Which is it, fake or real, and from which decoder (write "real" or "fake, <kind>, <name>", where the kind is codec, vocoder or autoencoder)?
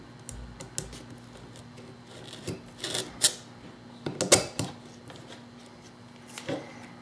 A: real